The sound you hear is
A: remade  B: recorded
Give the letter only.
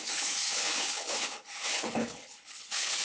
A